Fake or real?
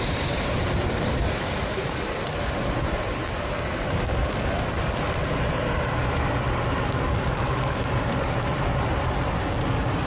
fake